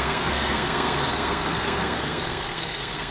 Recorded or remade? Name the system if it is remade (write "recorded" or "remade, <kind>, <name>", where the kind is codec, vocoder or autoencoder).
remade, codec, SNAC